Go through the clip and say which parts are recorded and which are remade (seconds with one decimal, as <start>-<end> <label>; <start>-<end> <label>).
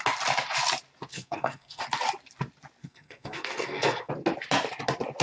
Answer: 0.0-1.1 recorded; 1.1-1.8 remade; 1.8-2.8 recorded; 2.8-4.1 remade; 4.1-5.2 recorded